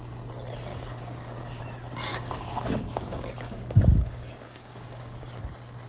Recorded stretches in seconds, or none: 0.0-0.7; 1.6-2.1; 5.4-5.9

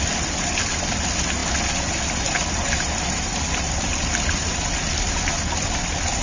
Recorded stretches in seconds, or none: 0.0-6.2